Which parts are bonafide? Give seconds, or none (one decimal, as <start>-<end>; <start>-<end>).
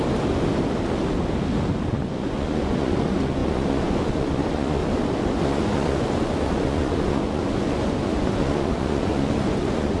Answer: 0.0-1.9; 4.8-5.3